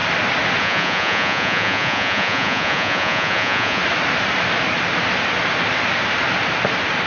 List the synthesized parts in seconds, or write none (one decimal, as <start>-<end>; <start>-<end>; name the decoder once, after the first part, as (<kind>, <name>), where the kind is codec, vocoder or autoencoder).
0.6-3.8 (vocoder, Vocos)